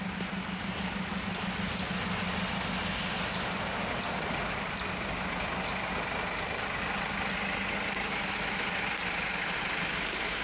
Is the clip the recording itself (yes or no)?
yes